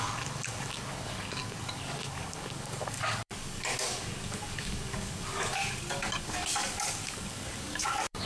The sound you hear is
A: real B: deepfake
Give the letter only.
B